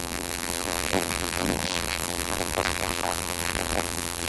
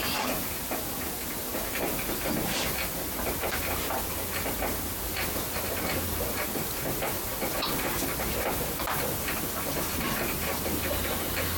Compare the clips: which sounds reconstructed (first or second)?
first